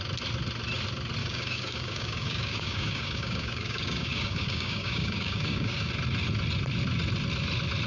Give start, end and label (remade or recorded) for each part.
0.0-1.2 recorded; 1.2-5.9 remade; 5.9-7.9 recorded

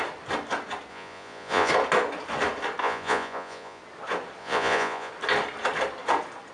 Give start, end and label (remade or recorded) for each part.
0.0-0.9 recorded; 0.9-1.7 remade; 1.7-2.8 recorded; 2.8-3.8 remade; 3.8-4.4 recorded; 4.4-5.1 remade; 5.1-6.5 recorded